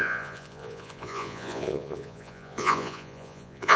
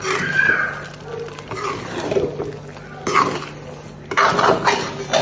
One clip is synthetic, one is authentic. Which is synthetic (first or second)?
first